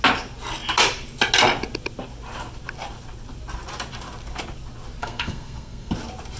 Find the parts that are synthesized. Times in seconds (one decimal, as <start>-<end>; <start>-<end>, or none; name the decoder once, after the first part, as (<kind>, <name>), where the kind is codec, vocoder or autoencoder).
5.0-5.9 (codec, SNAC)